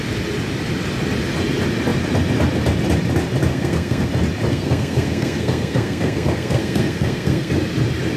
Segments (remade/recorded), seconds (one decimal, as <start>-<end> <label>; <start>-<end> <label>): 0.0-3.5 recorded; 3.5-4.1 remade; 4.1-4.5 recorded; 4.5-7.5 remade; 7.5-8.2 recorded